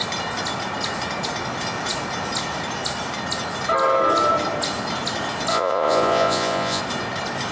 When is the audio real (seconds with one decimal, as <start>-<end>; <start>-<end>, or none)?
0.0-5.5; 6.8-7.5